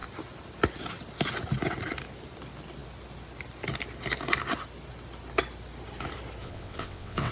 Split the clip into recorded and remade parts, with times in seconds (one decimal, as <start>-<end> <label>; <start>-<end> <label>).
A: 0.0-6.4 recorded; 6.4-7.3 remade